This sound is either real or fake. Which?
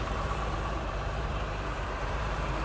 fake